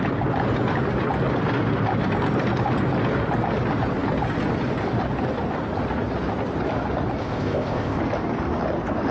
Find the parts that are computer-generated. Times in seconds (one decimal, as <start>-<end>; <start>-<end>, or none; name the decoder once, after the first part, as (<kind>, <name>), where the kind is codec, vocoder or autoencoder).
7.2-8.0 (codec, ZipCodec)